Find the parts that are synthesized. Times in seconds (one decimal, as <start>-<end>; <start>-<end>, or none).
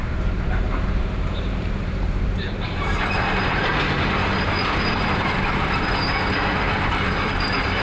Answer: 0.0-3.7; 6.9-7.8